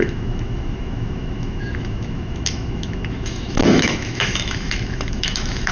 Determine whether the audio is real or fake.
fake